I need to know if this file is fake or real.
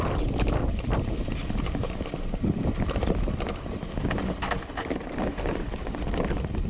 real